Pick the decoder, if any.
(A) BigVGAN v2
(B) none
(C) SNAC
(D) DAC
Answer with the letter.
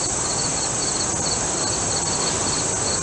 B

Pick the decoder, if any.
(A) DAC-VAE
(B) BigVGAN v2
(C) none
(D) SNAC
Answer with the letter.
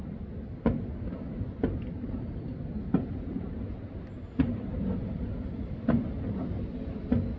C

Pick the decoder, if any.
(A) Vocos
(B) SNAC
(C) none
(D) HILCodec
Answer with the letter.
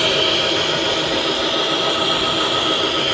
C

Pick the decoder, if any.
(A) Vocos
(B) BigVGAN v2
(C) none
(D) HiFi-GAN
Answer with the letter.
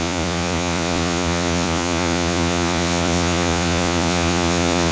A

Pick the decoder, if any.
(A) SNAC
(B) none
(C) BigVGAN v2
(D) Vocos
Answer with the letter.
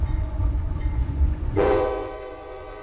D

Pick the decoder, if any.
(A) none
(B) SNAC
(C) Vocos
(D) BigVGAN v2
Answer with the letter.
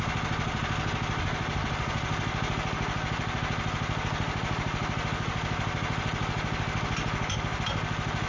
A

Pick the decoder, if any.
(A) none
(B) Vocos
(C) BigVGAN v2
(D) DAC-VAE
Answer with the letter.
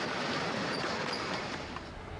A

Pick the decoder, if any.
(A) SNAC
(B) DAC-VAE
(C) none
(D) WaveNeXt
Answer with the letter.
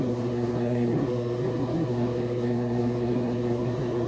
A